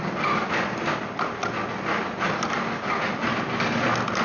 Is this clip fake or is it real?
real